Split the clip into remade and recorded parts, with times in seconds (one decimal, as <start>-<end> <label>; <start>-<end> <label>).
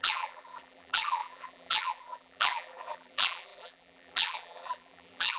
0.0-5.4 remade